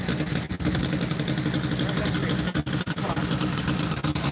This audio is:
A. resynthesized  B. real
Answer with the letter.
B